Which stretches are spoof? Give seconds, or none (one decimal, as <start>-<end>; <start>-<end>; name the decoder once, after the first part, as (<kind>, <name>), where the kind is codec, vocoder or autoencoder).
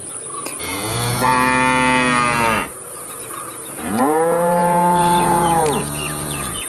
0.6-1.3 (vocoder, Vocos); 2.9-6.7